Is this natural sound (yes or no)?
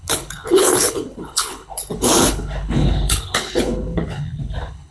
no